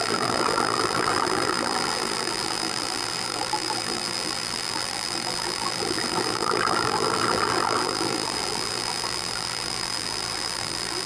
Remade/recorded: remade